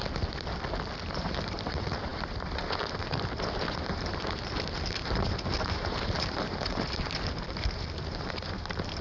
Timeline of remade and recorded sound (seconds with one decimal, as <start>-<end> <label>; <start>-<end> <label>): 0.0-1.1 recorded; 1.1-9.0 remade